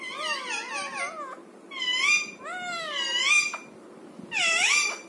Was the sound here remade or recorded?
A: recorded